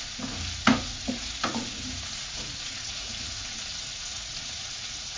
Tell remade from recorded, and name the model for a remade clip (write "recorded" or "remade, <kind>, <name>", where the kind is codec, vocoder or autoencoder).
remade, vocoder, Vocos